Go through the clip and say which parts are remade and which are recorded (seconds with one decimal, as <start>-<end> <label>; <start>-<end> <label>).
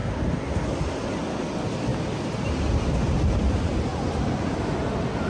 0.0-3.9 recorded; 3.9-4.5 remade; 4.5-5.3 recorded